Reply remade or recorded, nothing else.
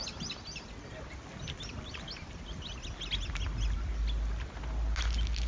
recorded